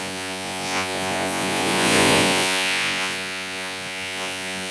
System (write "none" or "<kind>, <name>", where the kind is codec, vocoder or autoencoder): vocoder, Vocos